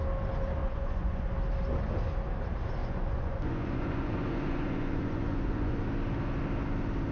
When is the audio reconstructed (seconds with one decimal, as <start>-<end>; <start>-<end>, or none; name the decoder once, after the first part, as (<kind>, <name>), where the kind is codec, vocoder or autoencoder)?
0.6-1.3 (vocoder, Vocos); 2.8-5.8